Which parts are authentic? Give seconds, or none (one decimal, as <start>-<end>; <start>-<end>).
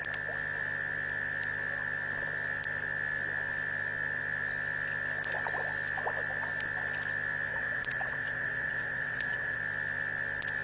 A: 0.0-7.5; 9.6-10.6